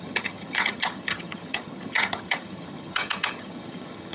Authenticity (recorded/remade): remade